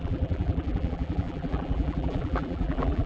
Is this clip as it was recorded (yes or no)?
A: no